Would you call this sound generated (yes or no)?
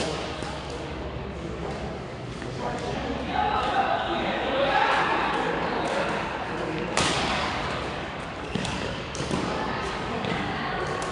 yes